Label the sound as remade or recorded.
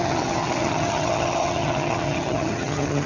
remade